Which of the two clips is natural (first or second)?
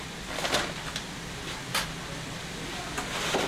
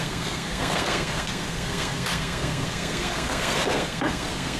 first